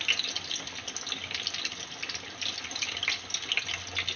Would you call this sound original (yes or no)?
yes